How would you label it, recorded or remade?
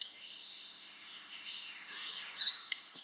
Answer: remade